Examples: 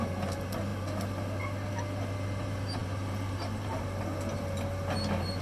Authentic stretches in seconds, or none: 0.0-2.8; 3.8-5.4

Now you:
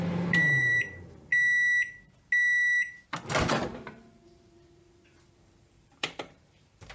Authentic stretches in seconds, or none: 1.3-3.5

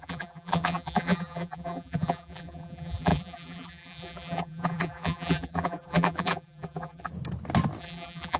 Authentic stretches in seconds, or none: 7.1-7.8

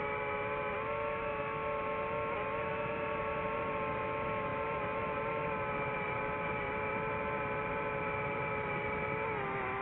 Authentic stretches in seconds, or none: 0.0-2.7; 4.0-4.5; 9.0-9.8

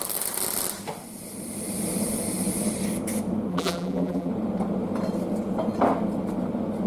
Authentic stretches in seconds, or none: 0.0-3.5; 4.3-6.9